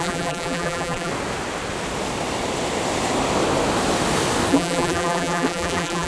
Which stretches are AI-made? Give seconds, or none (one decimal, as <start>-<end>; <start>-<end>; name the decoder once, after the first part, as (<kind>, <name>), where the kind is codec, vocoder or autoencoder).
0.0-1.1 (vocoder, BigVGAN v2); 4.5-6.1